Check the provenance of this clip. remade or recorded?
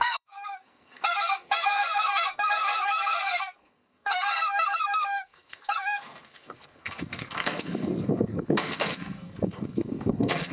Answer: remade